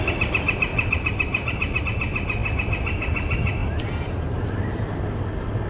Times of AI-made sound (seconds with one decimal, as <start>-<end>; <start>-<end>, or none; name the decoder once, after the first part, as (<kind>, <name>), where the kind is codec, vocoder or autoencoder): 0.7-1.8 (vocoder, BigVGAN v2); 3.6-5.0